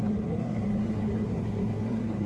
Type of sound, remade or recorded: remade